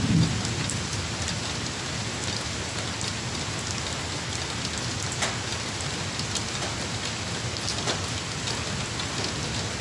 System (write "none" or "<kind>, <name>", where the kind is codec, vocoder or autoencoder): none